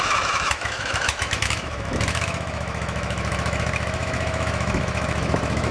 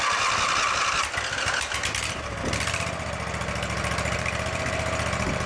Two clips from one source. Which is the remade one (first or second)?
first